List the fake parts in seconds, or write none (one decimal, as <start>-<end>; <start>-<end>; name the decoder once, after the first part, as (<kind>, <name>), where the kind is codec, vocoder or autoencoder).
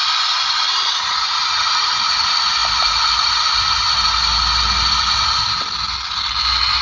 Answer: none